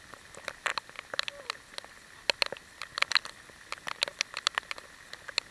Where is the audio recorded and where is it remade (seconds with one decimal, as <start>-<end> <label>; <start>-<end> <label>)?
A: 0.0-5.5 recorded